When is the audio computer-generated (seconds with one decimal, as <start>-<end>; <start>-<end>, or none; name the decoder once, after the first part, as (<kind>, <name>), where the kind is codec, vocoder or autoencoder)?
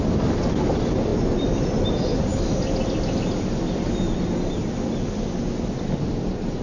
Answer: none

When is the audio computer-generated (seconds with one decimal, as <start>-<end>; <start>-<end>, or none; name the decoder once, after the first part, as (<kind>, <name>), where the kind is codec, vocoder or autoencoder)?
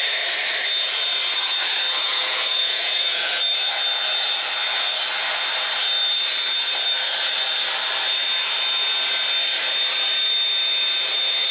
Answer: 2.0-3.4 (vocoder, Vocos)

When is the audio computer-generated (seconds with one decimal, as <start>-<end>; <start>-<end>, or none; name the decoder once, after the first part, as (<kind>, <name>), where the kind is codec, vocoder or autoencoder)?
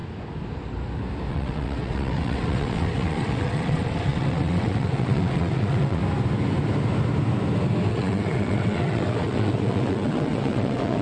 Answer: 1.3-6.0 (vocoder, WaveNeXt); 7.9-11.0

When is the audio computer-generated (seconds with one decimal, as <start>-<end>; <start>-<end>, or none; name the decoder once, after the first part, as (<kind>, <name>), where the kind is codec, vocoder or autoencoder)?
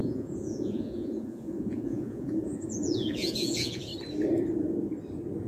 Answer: 0.0-3.9 (vocoder, Vocos)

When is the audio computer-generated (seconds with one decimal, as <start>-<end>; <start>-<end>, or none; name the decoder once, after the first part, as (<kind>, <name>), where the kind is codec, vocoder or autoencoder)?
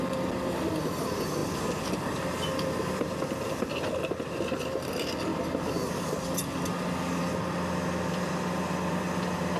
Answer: none